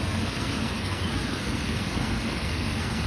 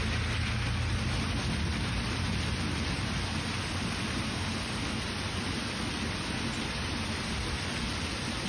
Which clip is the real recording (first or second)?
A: second